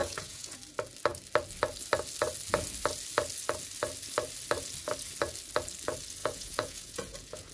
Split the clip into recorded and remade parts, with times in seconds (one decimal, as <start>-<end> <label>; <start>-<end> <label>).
0.0-0.6 remade; 0.6-6.2 recorded; 6.2-7.5 remade